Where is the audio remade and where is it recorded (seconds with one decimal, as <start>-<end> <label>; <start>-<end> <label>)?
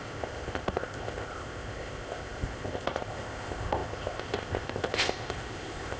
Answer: 0.0-6.0 remade